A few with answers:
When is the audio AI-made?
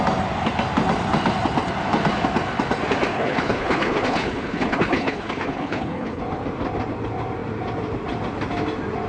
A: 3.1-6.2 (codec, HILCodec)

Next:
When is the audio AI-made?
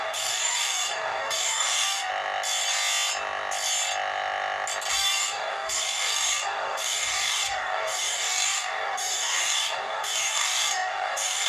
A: 0.0-2.1 (codec, DAC); 4.9-11.5